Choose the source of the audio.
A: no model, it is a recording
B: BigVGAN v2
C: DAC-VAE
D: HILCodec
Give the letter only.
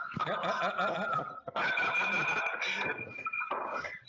A